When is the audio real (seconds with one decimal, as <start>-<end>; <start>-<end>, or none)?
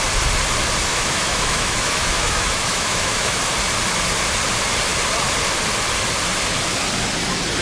0.0-0.9; 3.4-7.6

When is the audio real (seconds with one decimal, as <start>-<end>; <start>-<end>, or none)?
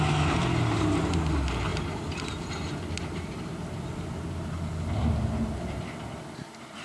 0.0-6.8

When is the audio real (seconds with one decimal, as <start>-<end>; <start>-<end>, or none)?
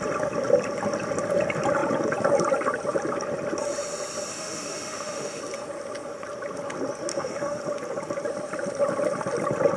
0.0-4.3; 5.4-7.1; 7.6-9.8